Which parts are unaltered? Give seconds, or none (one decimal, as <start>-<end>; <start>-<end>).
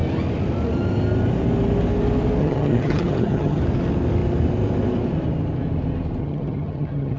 0.0-2.4; 3.6-6.2